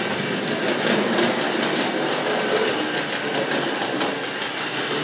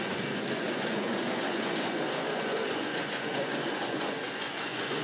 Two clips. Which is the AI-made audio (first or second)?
second